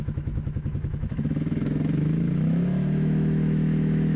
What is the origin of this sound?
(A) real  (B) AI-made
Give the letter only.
B